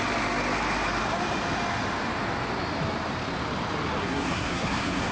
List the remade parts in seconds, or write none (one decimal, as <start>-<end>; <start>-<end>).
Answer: 4.0-5.1